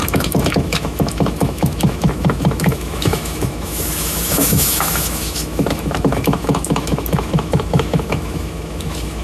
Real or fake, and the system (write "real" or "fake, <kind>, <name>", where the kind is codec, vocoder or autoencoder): fake, autoencoder, DAC-VAE